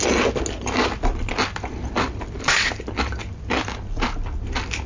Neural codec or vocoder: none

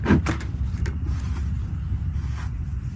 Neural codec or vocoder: none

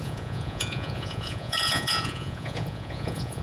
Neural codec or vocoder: vocoder, Vocos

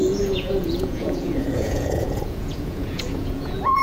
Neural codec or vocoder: vocoder, Vocos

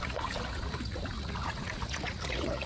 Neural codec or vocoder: vocoder, Vocos